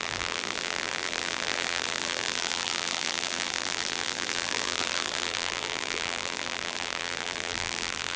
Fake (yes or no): yes